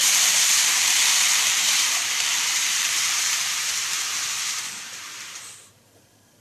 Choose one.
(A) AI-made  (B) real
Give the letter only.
A